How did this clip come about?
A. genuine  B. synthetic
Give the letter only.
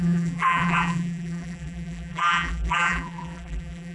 B